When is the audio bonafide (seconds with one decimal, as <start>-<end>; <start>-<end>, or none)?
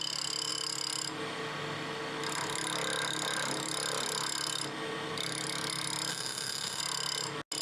0.0-6.1; 6.8-7.6